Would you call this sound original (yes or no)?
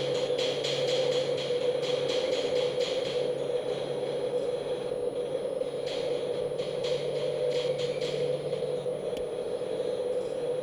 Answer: yes